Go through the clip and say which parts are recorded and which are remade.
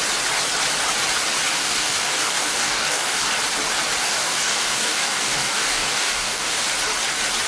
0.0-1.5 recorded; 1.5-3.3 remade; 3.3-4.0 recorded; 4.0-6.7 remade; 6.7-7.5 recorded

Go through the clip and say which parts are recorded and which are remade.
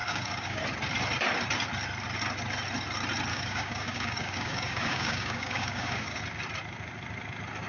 0.0-0.6 remade; 0.6-3.3 recorded; 3.3-6.2 remade; 6.2-7.7 recorded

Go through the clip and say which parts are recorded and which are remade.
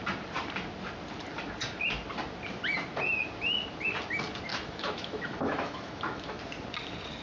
0.0-4.5 recorded; 4.5-6.4 remade; 6.4-7.2 recorded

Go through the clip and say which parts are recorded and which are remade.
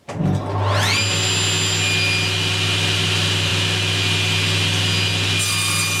0.0-6.0 recorded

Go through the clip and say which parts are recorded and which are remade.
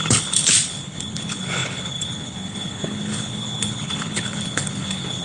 0.0-5.2 remade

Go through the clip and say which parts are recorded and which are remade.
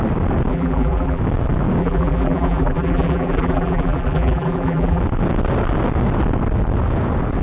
0.0-0.5 recorded; 0.5-1.2 remade; 1.2-1.8 recorded; 1.8-5.0 remade; 5.0-7.4 recorded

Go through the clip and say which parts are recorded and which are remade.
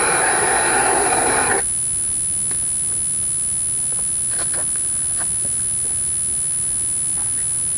0.0-7.8 recorded